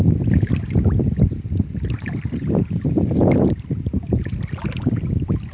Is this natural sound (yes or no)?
yes